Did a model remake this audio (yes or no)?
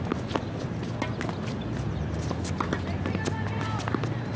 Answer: no